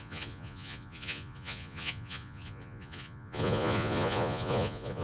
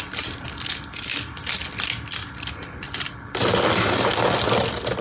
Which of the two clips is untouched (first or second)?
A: second